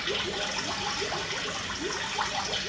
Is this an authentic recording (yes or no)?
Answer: yes